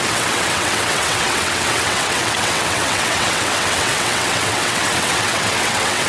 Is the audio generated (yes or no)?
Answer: yes